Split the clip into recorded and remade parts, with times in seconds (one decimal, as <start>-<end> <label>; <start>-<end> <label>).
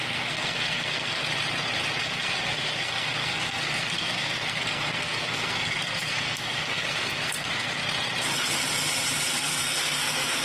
0.0-1.2 remade; 1.2-2.0 recorded; 2.0-7.8 remade; 7.8-9.4 recorded; 9.4-10.4 remade